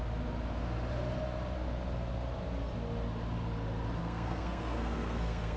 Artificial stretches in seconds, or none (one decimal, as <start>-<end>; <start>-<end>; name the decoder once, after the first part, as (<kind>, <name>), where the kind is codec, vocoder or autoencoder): 4.0-5.6 (codec, SNAC)